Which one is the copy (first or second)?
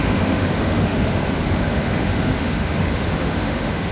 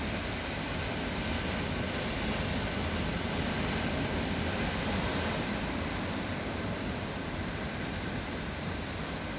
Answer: first